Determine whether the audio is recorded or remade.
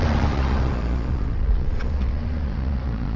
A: remade